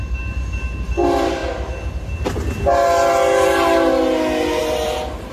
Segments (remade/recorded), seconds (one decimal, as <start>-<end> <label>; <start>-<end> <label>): 0.0-1.4 remade; 1.4-4.6 recorded; 4.6-5.3 remade